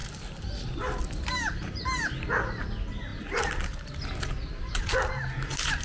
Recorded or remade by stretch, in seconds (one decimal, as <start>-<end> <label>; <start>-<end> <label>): 0.0-5.8 recorded